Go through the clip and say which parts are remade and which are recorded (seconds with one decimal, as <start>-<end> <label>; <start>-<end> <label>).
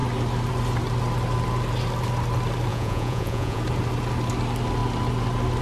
0.0-2.7 recorded; 2.7-3.6 remade; 3.6-5.6 recorded